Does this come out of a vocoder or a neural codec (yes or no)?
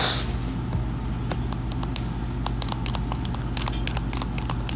no